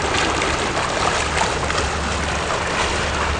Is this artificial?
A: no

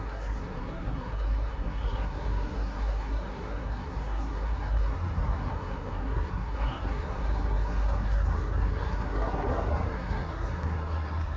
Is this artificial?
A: yes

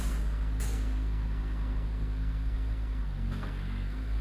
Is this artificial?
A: yes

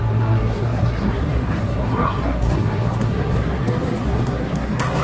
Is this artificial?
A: yes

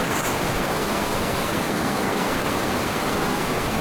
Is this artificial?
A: yes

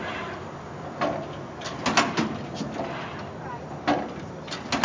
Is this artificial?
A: no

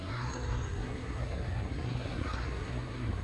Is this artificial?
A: yes